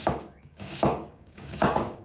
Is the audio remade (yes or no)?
yes